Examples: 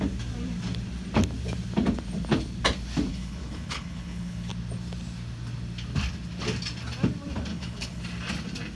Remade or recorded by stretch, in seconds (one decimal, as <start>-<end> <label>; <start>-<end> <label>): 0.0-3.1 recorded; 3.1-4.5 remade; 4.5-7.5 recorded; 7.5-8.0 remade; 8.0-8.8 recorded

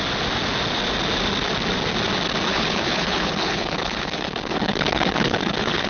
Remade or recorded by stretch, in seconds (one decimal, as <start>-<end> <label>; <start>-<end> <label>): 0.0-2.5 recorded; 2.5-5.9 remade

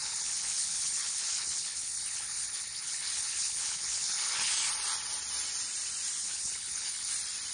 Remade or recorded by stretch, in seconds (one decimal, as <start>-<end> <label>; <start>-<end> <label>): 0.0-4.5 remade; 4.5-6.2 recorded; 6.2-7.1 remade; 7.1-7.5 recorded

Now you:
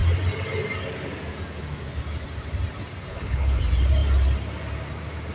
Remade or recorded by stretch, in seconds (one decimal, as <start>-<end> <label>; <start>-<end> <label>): 0.0-3.1 recorded; 3.1-3.6 remade; 3.6-5.3 recorded